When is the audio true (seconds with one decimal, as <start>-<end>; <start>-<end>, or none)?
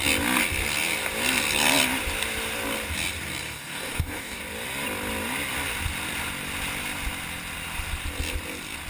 0.0-3.4; 4.4-8.9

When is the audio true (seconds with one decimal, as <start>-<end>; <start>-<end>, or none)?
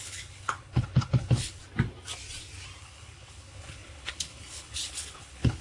1.6-2.8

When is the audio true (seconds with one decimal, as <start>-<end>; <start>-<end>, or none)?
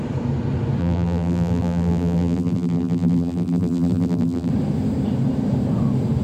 0.0-0.8; 4.5-6.2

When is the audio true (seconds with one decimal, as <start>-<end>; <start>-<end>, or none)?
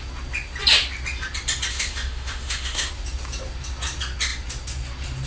0.0-1.7; 2.9-5.3